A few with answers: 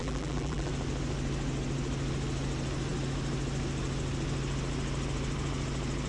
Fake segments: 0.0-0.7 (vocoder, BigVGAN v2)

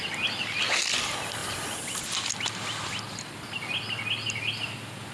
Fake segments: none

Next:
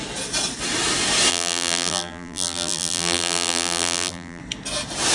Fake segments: 1.3-4.4 (vocoder, BigVGAN v2)